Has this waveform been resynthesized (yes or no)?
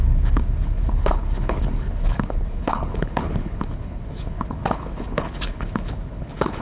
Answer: yes